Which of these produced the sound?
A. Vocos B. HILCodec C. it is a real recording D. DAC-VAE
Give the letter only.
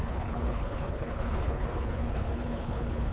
B